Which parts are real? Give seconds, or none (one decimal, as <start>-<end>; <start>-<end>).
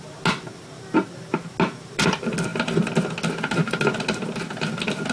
0.0-5.1